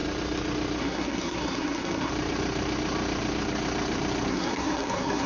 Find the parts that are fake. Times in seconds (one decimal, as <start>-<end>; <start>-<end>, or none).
0.8-2.1; 4.3-5.3